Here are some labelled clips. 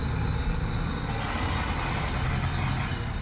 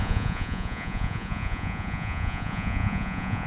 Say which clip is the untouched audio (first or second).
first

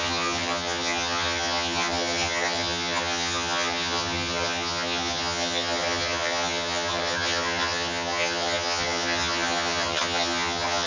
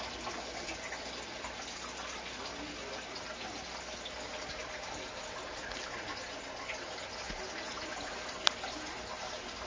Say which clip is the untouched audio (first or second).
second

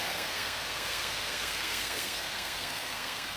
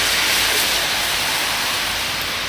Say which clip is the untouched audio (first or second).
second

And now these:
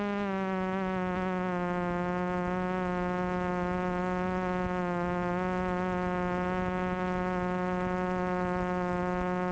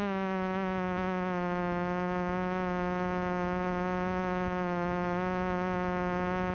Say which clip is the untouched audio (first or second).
first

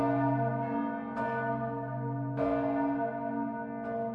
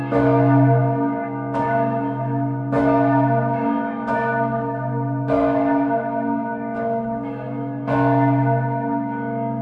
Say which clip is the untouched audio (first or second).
first